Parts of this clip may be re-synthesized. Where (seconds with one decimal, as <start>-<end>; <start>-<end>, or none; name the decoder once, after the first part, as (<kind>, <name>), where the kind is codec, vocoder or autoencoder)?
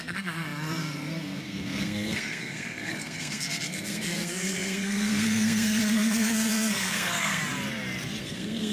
0.0-7.4 (codec, SNAC); 8.2-8.7